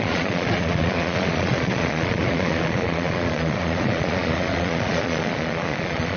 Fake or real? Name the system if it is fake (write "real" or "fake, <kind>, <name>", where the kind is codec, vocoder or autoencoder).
fake, vocoder, Vocos